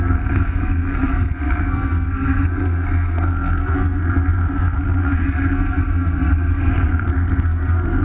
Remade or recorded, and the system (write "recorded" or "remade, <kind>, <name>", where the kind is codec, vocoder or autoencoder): remade, codec, SNAC